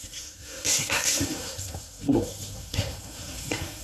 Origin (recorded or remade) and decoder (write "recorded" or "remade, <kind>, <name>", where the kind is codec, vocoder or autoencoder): remade, codec, SNAC